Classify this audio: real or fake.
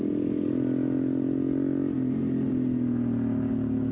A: real